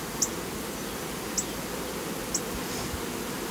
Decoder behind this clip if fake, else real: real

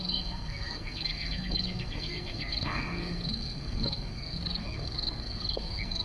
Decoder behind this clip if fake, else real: fake, codec, SNAC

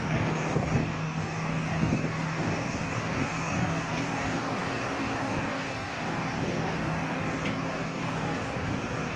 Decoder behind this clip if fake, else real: fake, codec, DAC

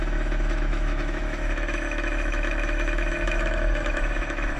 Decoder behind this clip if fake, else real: fake, autoencoder, DAC-VAE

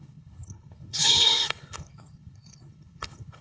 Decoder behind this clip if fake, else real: fake, codec, HILCodec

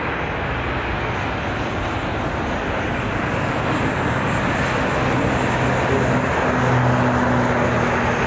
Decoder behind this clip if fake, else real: real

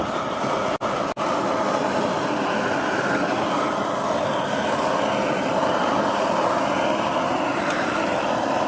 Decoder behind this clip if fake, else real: real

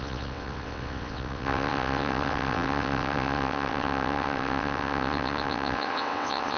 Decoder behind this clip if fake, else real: fake, vocoder, WaveNeXt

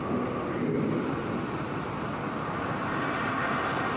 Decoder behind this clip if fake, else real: real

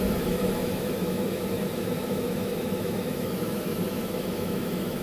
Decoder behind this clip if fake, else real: fake, autoencoder, DAC-VAE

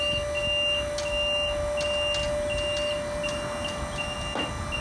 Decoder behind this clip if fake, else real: real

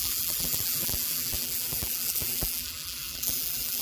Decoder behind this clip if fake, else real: fake, vocoder, BigVGAN v2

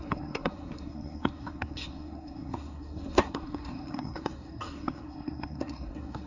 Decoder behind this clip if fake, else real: fake, codec, SNAC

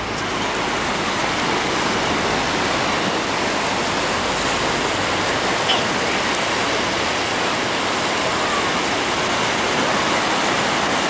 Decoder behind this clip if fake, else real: real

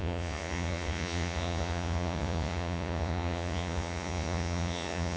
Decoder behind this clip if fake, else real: fake, vocoder, Vocos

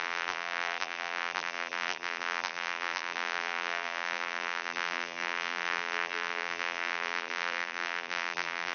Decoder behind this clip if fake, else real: fake, vocoder, BigVGAN v2